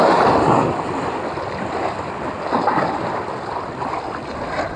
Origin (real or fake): real